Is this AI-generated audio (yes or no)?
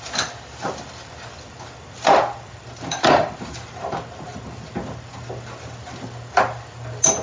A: no